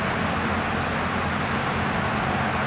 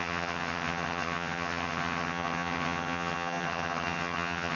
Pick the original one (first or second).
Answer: first